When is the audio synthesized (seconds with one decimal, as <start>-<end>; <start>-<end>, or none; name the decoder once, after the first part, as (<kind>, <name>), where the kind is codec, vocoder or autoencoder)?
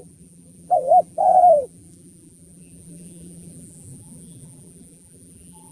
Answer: 0.0-5.7 (vocoder, BigVGAN v2)